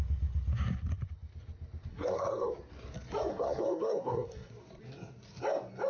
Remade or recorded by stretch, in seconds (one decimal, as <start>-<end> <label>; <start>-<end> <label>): 0.0-1.9 recorded; 1.9-2.5 remade; 2.5-3.3 recorded; 3.3-4.5 remade; 4.5-5.9 recorded